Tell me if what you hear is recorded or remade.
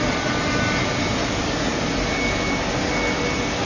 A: recorded